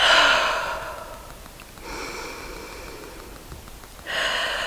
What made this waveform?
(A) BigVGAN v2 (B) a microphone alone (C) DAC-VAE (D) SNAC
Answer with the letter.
B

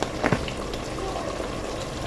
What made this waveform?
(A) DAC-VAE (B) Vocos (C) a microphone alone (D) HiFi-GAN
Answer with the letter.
C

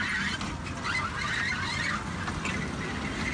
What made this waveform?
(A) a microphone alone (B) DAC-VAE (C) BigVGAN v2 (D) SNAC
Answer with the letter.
A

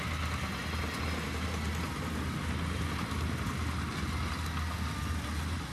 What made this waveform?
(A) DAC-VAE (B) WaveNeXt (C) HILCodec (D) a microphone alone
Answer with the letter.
D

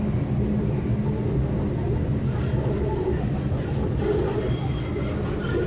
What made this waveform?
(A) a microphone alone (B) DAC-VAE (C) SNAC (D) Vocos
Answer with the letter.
A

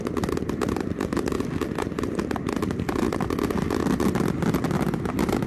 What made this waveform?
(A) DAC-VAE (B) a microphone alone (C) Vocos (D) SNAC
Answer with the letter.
B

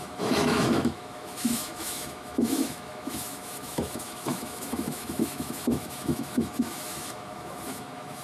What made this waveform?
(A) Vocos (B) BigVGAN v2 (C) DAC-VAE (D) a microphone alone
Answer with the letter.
C